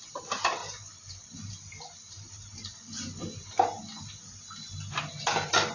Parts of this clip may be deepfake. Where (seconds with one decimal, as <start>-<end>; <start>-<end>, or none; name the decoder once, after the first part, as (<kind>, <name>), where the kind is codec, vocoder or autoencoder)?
none